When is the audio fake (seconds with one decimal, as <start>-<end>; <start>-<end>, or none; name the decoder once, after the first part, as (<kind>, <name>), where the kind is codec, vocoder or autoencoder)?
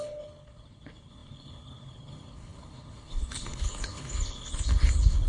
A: 0.0-5.3 (codec, HILCodec)